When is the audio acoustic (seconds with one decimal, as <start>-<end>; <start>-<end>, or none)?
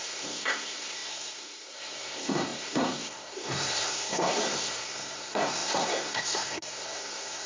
none